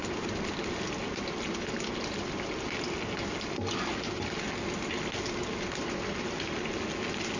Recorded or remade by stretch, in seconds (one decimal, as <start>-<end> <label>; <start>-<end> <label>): 0.0-7.4 recorded